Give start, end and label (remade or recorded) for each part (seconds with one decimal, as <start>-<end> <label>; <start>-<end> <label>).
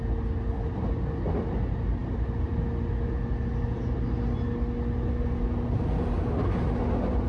0.0-7.3 recorded